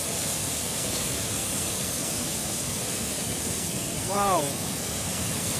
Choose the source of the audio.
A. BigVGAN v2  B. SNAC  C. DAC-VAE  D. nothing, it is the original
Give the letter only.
B